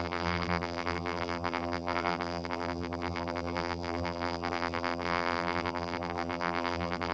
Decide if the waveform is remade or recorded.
remade